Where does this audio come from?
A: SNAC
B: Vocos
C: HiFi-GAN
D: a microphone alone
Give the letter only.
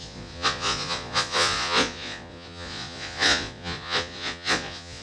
B